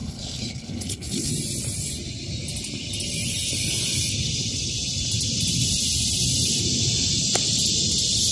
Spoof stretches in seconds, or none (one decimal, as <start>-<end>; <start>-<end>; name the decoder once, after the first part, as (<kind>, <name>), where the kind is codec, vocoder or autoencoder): 0.0-1.3 (codec, HILCodec)